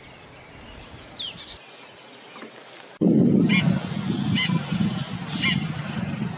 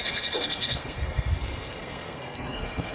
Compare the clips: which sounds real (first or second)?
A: first